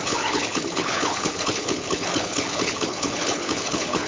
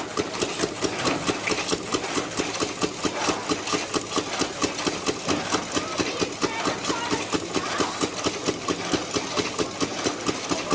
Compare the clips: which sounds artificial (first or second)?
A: first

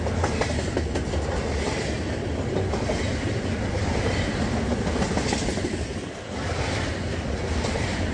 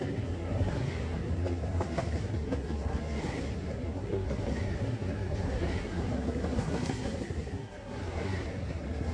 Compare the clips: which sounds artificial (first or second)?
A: second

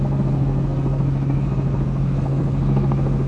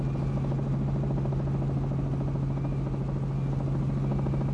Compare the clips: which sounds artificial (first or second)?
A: first